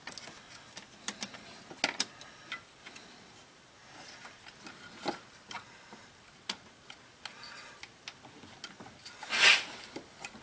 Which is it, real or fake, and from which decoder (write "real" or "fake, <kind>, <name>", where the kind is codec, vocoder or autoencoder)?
real